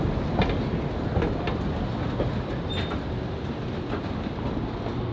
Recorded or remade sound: recorded